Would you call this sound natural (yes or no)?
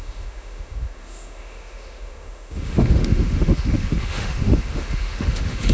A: no